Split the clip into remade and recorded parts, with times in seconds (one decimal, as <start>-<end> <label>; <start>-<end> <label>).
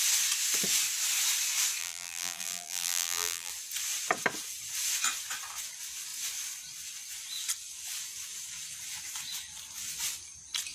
0.0-1.8 recorded; 1.8-3.5 remade; 3.5-10.7 recorded